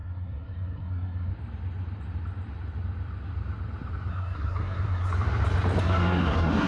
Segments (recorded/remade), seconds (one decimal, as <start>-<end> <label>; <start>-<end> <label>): 0.0-1.3 remade; 1.3-4.1 recorded; 4.1-5.1 remade; 5.1-5.8 recorded; 5.8-6.7 remade